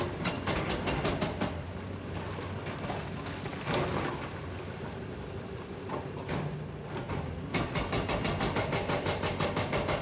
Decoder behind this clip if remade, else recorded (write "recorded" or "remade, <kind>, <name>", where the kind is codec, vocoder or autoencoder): recorded